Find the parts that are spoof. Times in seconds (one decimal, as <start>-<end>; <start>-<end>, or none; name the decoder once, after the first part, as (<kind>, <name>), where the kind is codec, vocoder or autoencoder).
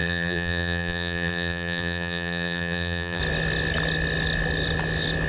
0.0-3.2 (vocoder, BigVGAN v2)